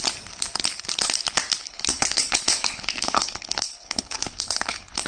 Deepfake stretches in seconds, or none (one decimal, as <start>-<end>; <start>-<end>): 1.6-5.1